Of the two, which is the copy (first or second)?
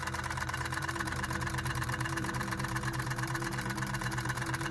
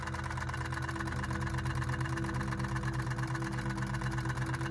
first